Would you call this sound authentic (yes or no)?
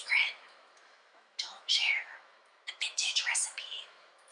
no